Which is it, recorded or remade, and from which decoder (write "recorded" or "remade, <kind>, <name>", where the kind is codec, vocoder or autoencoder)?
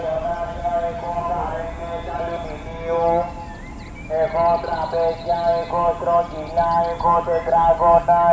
recorded